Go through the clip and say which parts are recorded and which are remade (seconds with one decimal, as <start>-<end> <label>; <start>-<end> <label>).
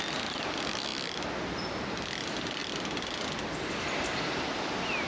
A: 0.0-2.6 recorded; 2.6-4.4 remade; 4.4-5.1 recorded